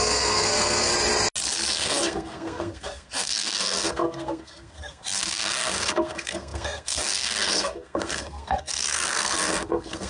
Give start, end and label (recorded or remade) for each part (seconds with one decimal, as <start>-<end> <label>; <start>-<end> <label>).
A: 0.0-0.9 remade; 0.9-1.7 recorded; 1.7-10.1 remade